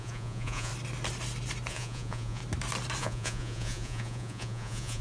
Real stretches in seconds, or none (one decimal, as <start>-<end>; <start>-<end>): 0.7-1.7; 2.4-3.0